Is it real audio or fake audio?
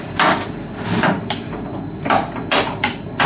real